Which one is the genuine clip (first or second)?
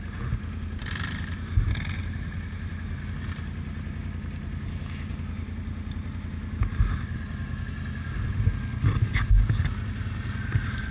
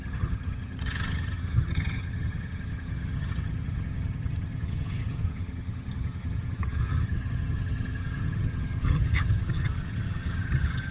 first